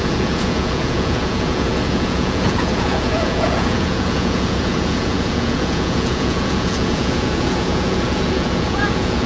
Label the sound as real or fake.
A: fake